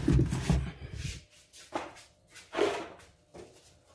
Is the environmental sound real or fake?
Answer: real